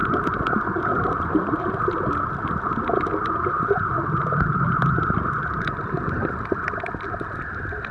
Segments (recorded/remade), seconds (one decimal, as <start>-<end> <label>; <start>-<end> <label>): 0.0-1.8 remade; 1.8-5.5 recorded; 5.5-6.5 remade; 6.5-7.9 recorded